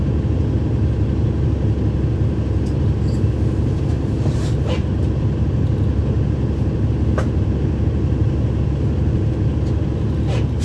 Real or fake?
real